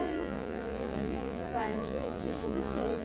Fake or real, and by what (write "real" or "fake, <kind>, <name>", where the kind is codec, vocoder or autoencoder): fake, vocoder, Vocos